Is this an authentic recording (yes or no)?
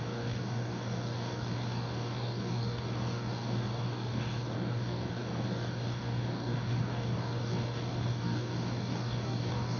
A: no